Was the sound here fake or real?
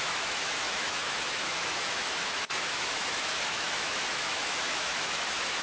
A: fake